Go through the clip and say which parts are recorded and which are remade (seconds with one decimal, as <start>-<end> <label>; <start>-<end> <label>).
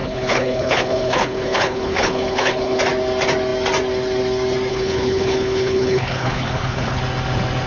0.0-2.8 remade; 2.8-4.7 recorded; 4.7-7.0 remade; 7.0-7.7 recorded